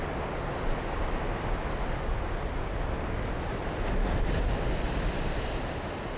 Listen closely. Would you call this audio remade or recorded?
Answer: recorded